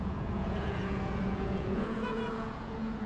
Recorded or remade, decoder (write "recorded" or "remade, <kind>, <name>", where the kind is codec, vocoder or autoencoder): remade, vocoder, Vocos